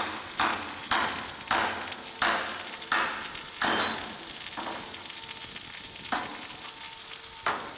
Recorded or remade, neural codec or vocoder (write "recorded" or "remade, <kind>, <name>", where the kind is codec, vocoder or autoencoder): recorded